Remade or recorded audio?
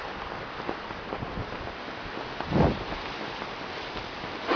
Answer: recorded